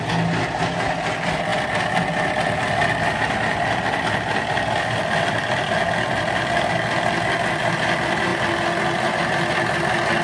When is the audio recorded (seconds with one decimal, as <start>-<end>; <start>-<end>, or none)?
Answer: 0.0-1.5; 6.7-10.2